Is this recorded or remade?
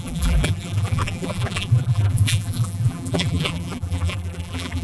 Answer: remade